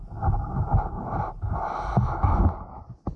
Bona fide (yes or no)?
yes